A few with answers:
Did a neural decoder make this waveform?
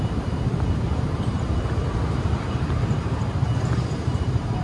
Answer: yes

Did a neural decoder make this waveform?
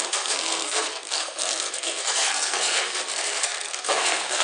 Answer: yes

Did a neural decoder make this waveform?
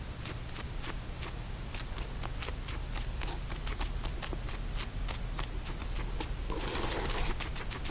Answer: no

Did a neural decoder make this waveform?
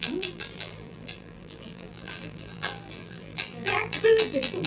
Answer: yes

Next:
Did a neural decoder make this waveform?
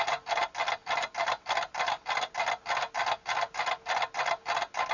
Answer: no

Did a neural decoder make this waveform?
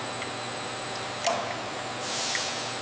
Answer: no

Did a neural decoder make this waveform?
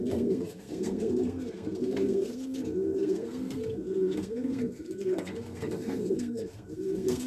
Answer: yes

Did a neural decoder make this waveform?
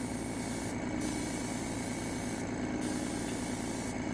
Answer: no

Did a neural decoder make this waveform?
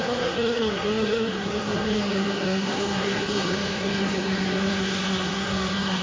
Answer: yes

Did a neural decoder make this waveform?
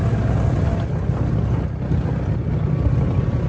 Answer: no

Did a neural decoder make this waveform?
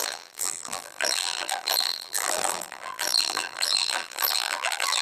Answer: yes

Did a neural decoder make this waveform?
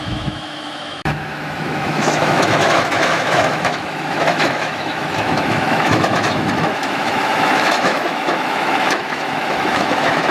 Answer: yes